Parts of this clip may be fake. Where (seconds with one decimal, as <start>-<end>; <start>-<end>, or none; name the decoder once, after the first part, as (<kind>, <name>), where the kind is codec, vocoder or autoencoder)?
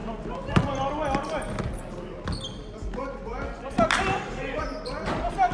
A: none